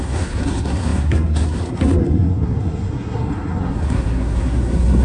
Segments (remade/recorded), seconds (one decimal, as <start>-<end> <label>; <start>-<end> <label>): 0.0-5.0 remade